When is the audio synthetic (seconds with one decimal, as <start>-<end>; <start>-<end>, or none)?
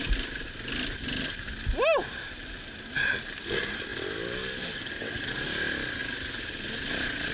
none